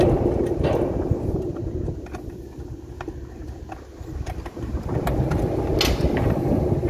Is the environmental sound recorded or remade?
recorded